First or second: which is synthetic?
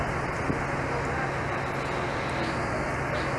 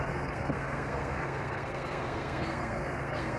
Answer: second